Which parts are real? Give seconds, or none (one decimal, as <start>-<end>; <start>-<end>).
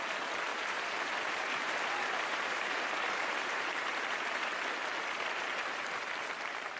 0.0-0.5; 4.6-6.8